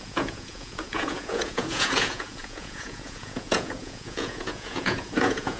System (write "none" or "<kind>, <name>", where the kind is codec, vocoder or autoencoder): vocoder, Vocos